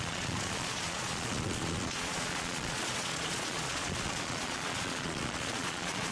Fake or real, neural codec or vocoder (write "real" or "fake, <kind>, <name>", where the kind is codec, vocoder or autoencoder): fake, vocoder, Vocos